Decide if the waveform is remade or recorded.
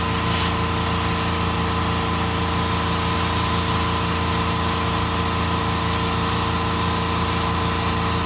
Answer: recorded